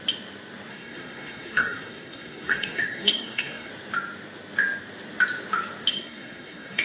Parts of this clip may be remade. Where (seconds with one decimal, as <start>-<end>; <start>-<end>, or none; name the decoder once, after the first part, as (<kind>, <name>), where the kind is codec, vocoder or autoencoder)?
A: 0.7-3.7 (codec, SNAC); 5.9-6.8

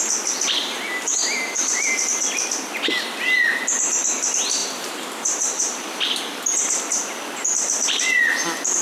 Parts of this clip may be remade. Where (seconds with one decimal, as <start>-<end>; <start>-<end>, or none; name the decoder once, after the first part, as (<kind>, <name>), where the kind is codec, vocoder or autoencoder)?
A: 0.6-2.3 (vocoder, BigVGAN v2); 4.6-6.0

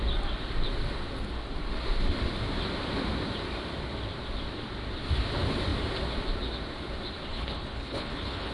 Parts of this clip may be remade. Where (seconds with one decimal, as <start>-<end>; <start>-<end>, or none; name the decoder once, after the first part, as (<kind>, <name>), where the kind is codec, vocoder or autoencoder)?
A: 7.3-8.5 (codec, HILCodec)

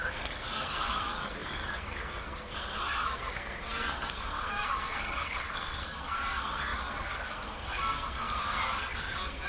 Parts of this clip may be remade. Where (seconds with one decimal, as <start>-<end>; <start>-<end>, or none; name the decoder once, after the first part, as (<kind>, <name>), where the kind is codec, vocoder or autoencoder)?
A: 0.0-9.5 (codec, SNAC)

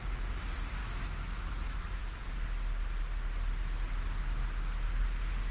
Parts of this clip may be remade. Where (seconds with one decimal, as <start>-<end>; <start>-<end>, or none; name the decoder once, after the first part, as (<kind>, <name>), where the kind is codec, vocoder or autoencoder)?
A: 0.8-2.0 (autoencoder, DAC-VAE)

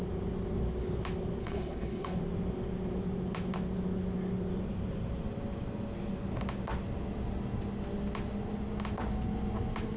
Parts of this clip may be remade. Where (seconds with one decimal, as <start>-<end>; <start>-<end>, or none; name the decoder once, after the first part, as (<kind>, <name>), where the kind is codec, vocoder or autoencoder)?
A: 1.4-2.2 (codec, HILCodec)

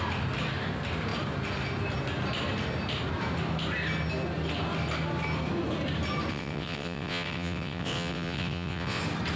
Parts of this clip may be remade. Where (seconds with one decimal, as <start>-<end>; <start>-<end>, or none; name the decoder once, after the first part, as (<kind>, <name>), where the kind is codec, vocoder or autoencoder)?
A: 6.3-9.0 (vocoder, WaveNeXt)